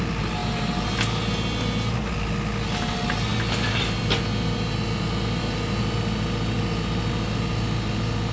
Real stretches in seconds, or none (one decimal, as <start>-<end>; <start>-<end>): 0.0-8.3